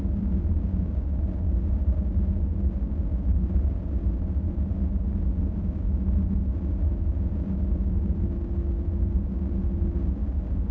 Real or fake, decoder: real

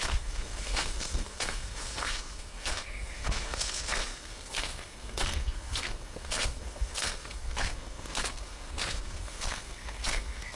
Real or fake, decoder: fake, codec, SNAC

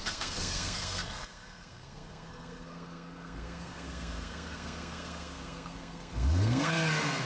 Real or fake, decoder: fake, codec, SNAC